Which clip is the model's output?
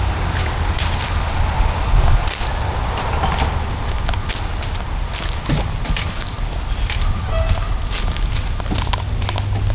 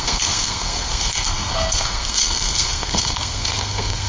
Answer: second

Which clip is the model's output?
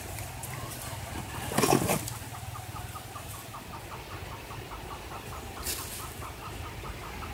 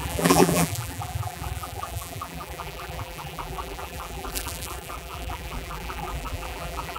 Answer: second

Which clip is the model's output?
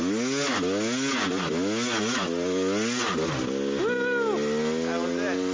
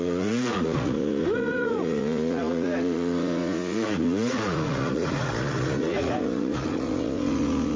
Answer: second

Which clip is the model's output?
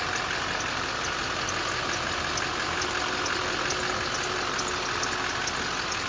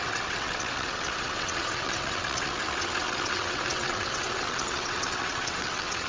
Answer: second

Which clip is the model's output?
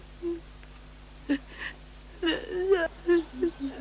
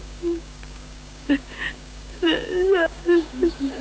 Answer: second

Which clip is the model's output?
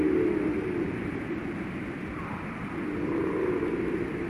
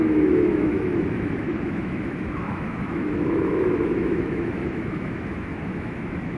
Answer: second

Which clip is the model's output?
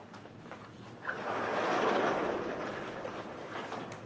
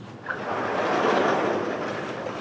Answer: second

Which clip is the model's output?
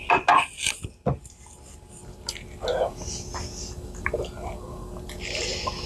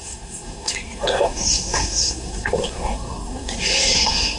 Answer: second